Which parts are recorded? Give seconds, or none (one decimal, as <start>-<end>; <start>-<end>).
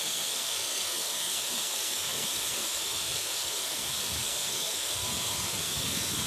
none